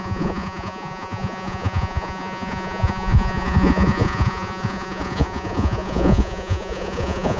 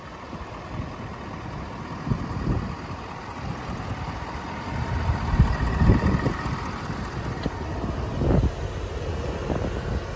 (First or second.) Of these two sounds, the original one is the second